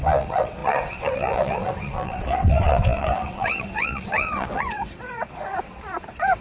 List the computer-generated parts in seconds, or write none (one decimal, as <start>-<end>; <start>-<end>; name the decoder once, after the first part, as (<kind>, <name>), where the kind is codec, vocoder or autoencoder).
0.0-6.4 (vocoder, WaveNeXt)